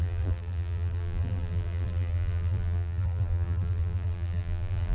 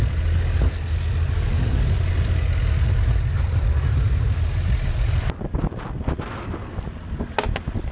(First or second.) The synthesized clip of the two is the first